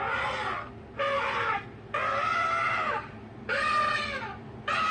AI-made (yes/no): no